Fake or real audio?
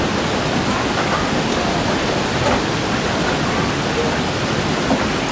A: real